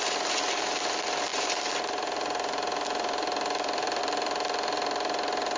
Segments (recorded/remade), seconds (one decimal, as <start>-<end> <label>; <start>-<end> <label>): 0.0-1.3 recorded; 1.3-4.0 remade; 4.0-5.6 recorded

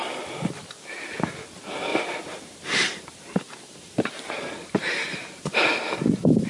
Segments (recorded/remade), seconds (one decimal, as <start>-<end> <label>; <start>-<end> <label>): 0.0-1.9 recorded; 1.9-5.6 remade; 5.6-6.5 recorded

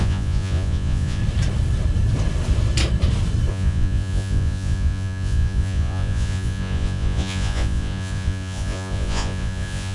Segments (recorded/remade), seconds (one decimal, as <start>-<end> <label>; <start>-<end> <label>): 0.0-1.2 remade; 1.2-3.5 recorded; 3.5-9.9 remade

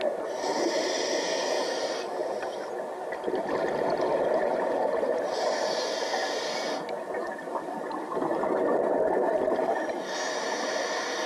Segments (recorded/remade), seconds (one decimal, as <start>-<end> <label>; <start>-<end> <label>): 0.0-11.3 recorded

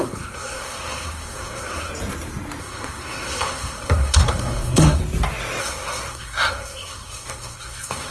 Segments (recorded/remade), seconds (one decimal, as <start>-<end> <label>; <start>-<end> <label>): 0.0-1.9 remade; 1.9-2.6 recorded; 2.6-5.0 remade; 5.0-5.6 recorded; 5.6-8.1 remade